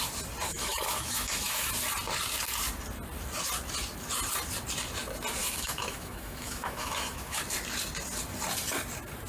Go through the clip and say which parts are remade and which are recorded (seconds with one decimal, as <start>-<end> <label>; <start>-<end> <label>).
0.0-0.5 recorded; 0.5-1.7 remade; 1.7-5.4 recorded; 5.4-7.4 remade; 7.4-9.3 recorded